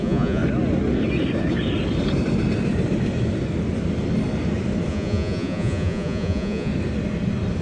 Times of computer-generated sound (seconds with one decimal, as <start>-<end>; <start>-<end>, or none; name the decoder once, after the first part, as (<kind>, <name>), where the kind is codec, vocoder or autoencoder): 0.0-0.4 (vocoder, Vocos); 4.9-6.7